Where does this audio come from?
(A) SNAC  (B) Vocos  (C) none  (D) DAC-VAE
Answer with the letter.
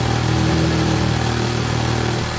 C